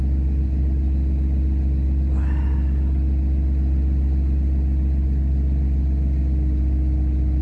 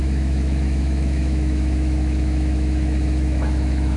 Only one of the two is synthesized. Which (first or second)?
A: second